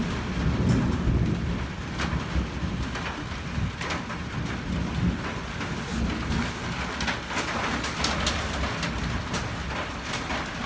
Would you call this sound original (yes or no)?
yes